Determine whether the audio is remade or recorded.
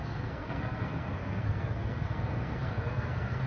remade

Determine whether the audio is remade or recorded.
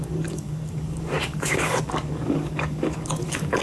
remade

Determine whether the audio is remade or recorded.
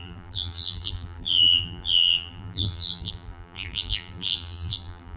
remade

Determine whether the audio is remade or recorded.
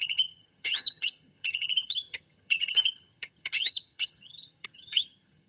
remade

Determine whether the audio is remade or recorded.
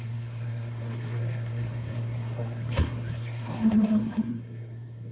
remade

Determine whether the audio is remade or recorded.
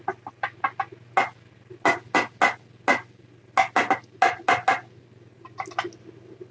recorded